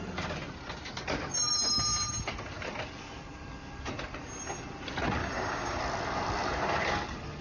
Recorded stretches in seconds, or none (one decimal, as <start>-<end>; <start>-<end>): 0.0-5.2; 5.8-7.4